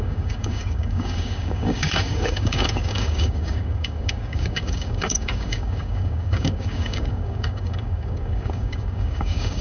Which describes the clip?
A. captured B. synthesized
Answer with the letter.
B